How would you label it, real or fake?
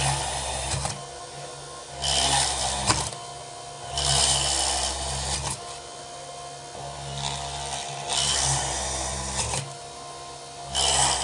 real